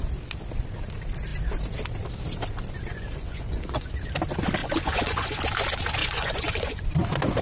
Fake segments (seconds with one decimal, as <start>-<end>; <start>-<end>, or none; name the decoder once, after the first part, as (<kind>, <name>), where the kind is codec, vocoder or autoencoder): 2.9-3.9 (vocoder, Vocos); 4.6-5.4; 6.0-6.8